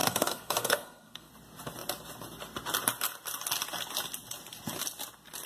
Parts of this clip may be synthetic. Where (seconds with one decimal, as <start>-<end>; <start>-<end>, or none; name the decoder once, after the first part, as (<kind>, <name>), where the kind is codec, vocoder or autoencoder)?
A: 0.0-1.3 (codec, SNAC)